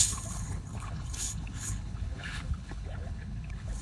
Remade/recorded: remade